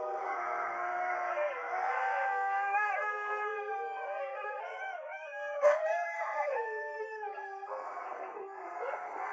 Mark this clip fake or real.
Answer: fake